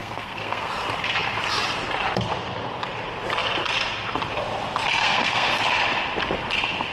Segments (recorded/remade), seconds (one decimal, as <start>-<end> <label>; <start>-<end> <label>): 0.0-0.7 remade; 0.7-5.0 recorded; 5.0-5.6 remade; 5.6-6.9 recorded